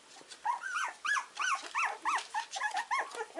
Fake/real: real